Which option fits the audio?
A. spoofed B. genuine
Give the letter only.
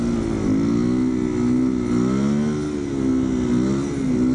B